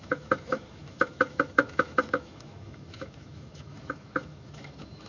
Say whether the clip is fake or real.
fake